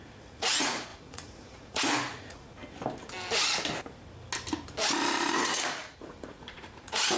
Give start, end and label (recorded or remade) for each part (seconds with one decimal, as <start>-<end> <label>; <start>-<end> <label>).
0.0-2.6 remade; 2.6-5.3 recorded; 5.3-7.2 remade

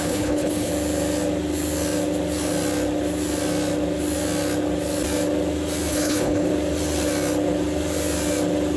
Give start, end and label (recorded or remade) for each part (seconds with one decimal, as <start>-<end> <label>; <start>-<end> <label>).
0.0-0.7 remade; 0.7-5.9 recorded; 5.9-6.5 remade; 6.5-8.8 recorded

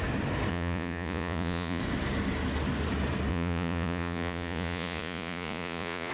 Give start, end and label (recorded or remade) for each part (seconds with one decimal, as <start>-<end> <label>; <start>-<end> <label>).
0.0-0.5 recorded; 0.5-1.8 remade; 1.8-3.3 recorded; 3.3-6.1 remade